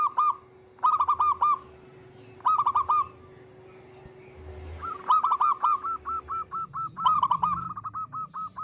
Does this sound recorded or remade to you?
recorded